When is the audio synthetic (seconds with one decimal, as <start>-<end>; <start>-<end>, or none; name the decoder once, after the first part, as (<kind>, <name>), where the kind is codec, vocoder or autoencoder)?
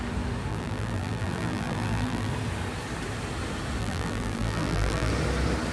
0.5-2.3 (vocoder, BigVGAN v2); 3.8-5.1